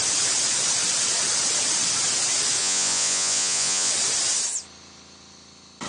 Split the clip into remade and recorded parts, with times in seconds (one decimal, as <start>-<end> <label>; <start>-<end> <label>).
0.0-2.6 recorded; 2.6-3.9 remade; 3.9-5.9 recorded